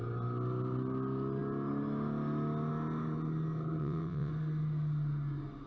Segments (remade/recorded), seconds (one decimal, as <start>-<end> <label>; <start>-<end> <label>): 0.0-3.8 recorded; 3.8-4.3 remade; 4.3-5.7 recorded